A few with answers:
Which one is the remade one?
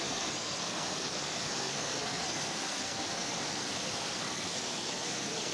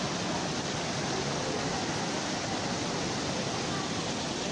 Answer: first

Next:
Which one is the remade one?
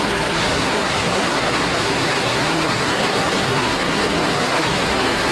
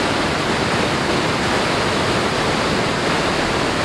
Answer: first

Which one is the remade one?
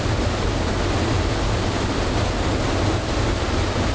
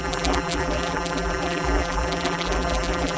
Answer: second